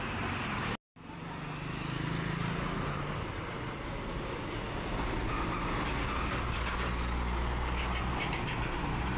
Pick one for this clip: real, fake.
real